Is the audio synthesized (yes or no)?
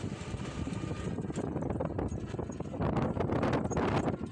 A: no